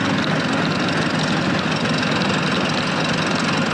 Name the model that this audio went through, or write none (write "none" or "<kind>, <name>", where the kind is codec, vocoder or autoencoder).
none